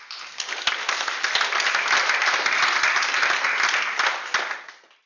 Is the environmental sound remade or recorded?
recorded